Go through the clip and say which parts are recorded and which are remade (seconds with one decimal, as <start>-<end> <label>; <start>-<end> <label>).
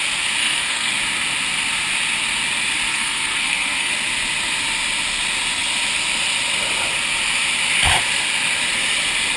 0.0-0.4 recorded; 0.4-0.9 remade; 0.9-2.9 recorded; 2.9-3.9 remade; 3.9-9.4 recorded